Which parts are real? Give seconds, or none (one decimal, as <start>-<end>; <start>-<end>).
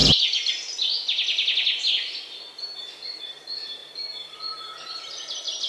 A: 0.0-5.7